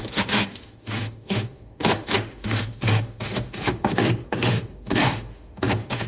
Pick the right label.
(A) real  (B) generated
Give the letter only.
B